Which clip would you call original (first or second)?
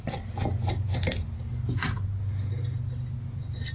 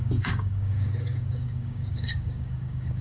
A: first